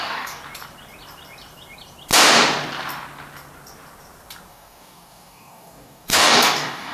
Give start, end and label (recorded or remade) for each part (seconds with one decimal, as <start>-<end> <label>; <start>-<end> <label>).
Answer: 0.0-0.4 remade; 0.4-4.5 recorded; 4.5-6.9 remade